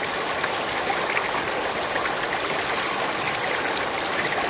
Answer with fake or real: real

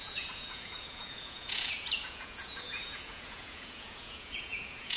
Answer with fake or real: fake